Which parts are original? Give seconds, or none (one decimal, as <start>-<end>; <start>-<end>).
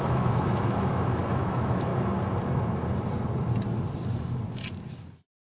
1.9-5.5